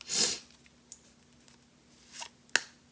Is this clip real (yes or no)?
yes